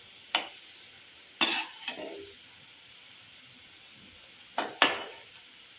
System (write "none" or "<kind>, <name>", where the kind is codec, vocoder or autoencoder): none